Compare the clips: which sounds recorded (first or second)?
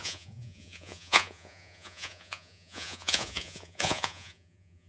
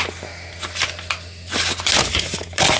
second